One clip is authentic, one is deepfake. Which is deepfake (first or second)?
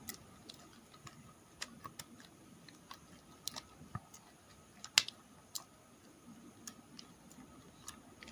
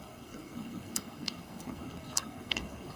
second